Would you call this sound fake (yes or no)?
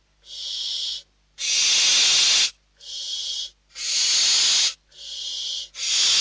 no